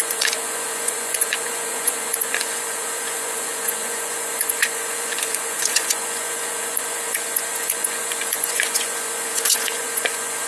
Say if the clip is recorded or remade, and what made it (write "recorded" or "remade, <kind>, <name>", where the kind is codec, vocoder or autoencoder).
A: remade, vocoder, Vocos